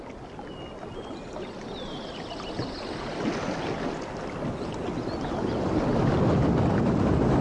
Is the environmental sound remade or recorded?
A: recorded